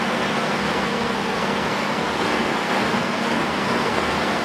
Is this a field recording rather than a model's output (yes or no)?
no